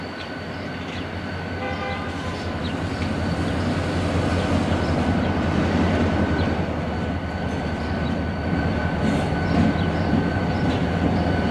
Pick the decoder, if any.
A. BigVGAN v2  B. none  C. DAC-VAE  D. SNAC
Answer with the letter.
B